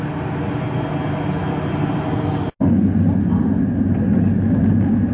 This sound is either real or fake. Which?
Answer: real